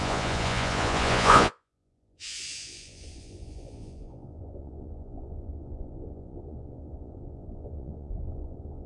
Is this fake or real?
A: fake